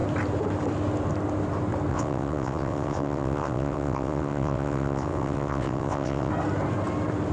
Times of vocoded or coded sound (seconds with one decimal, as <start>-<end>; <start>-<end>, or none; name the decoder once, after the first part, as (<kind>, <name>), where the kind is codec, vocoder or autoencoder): 1.9-6.3 (vocoder, WaveNeXt)

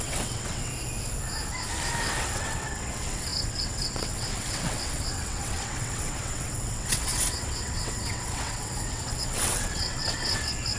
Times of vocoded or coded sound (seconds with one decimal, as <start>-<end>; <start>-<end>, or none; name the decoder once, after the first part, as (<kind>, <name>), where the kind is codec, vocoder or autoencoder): 0.0-0.7 (vocoder, WaveNeXt); 2.0-10.8